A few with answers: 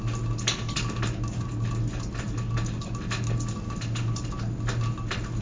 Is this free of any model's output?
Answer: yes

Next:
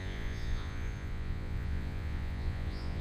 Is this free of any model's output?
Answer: no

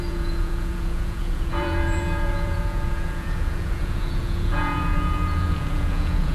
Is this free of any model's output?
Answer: no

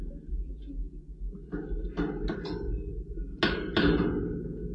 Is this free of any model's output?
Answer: yes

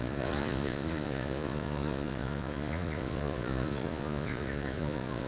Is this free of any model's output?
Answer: no